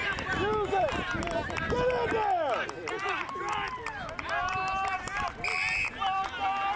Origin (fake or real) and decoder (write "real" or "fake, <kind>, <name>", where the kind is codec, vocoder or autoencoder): real